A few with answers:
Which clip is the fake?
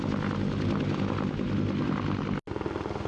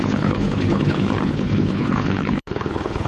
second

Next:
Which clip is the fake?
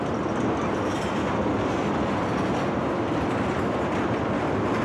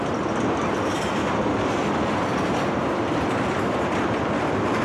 second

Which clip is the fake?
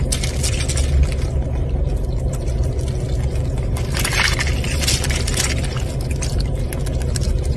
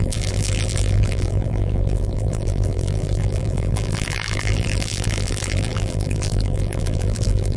second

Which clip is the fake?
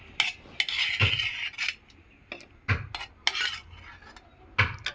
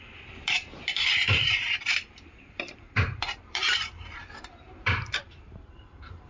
second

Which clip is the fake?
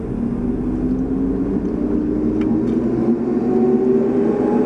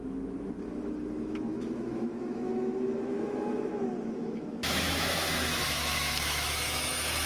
second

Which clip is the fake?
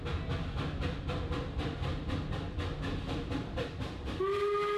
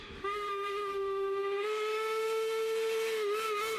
second